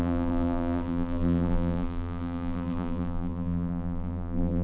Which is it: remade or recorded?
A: remade